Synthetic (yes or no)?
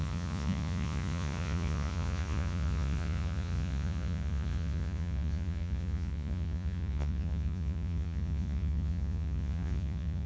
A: yes